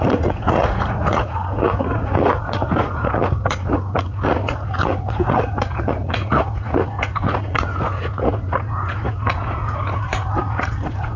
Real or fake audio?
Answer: fake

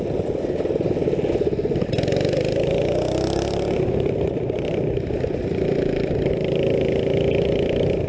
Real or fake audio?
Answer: real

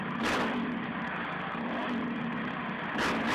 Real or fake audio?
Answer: real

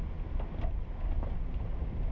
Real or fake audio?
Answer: real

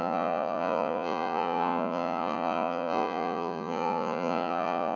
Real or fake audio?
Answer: fake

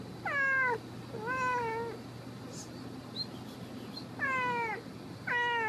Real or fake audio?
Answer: real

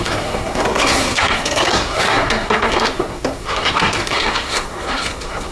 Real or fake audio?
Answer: fake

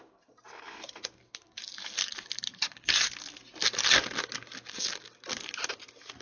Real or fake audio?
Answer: real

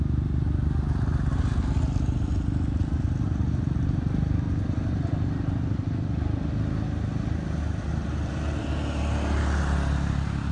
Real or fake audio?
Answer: real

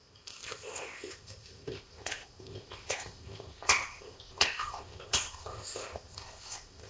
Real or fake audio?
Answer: fake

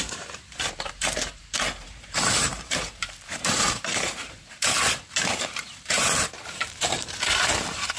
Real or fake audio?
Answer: fake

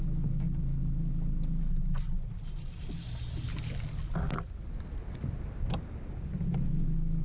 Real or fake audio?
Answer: real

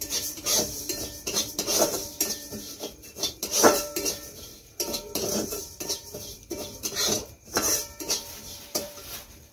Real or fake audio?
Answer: fake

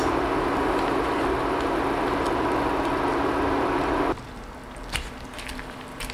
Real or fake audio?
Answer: real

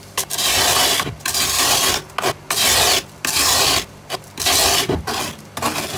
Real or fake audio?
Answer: real